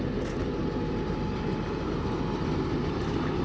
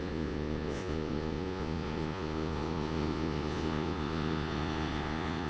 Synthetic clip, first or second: second